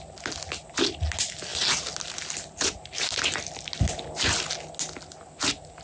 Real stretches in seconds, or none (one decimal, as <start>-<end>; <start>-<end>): 0.0-5.8